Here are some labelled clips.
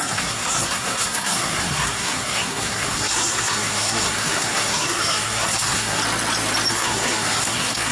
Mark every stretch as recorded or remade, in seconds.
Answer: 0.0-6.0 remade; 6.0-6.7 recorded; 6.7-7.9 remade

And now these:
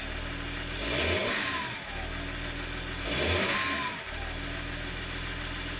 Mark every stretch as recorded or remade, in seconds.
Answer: 0.0-5.8 recorded

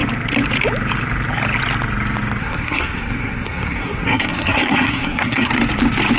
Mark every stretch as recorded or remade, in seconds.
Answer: 0.0-2.4 recorded; 2.4-5.5 remade; 5.5-6.2 recorded